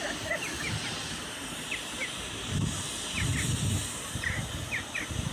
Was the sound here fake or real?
real